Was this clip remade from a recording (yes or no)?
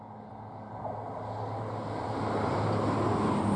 no